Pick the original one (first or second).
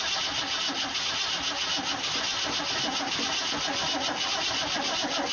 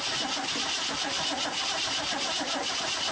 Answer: first